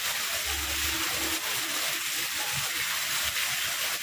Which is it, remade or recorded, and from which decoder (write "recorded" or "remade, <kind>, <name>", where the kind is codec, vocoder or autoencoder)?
recorded